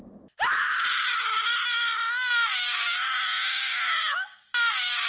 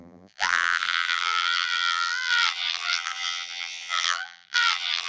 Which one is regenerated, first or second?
second